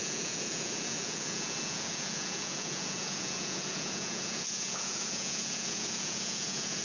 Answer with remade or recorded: remade